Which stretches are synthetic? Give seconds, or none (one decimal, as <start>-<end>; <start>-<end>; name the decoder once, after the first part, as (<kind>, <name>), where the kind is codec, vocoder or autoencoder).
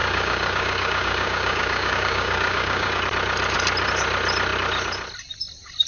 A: 0.0-3.0 (codec, DAC)